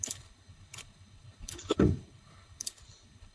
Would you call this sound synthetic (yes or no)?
yes